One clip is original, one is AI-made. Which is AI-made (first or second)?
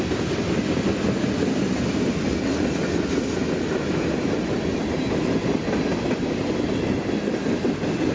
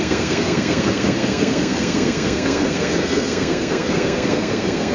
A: second